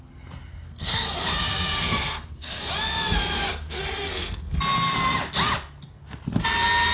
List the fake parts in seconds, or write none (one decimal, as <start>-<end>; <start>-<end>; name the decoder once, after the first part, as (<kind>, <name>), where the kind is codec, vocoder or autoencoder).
0.5-2.7 (codec, SNAC); 3.5-4.6